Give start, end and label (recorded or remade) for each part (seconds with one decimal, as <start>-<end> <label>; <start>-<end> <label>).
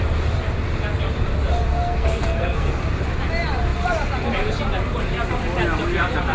0.0-1.7 recorded; 1.7-2.7 remade; 2.7-6.3 recorded